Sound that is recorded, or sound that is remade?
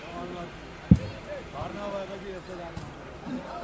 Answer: recorded